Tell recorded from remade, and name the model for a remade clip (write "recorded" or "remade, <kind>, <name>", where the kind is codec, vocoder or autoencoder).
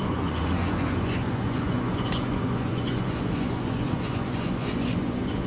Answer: remade, vocoder, Vocos